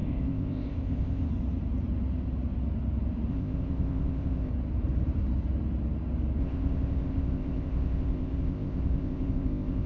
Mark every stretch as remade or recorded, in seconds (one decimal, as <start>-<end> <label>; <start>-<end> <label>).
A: 0.0-1.3 remade; 1.3-3.3 recorded; 3.3-4.5 remade; 4.5-6.4 recorded; 6.4-9.9 remade